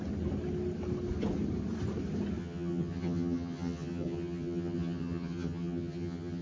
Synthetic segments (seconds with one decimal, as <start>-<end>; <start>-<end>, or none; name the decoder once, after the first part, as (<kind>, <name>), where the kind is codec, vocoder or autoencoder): 2.4-6.4 (vocoder, HiFi-GAN)